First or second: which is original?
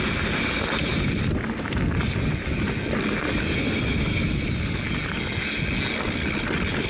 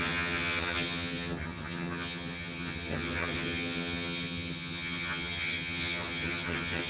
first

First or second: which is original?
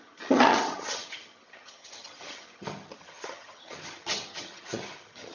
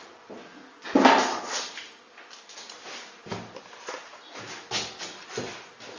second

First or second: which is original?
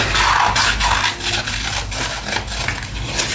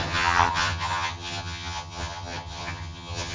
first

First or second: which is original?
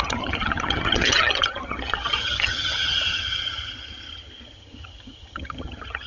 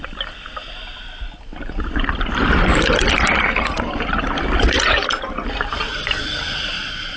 second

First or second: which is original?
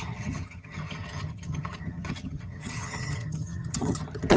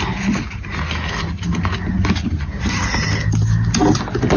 second